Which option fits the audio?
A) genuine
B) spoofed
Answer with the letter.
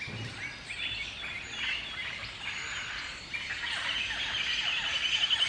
A